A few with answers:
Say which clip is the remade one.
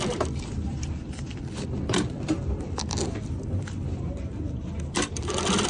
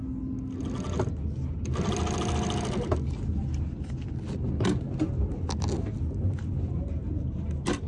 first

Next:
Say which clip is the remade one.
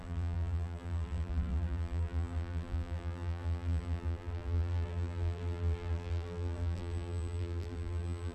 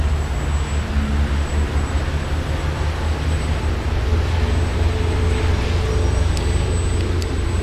first